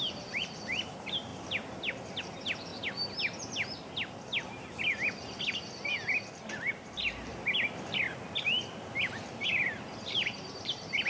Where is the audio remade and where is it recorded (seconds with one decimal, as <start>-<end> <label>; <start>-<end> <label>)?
0.0-1.3 remade; 1.3-2.2 recorded; 2.2-2.7 remade; 2.7-6.7 recorded; 6.7-7.3 remade; 7.3-9.5 recorded; 9.5-11.1 remade